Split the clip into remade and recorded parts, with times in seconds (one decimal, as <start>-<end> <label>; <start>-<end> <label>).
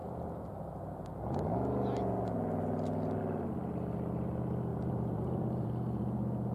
0.0-4.7 recorded; 4.7-5.7 remade; 5.7-6.5 recorded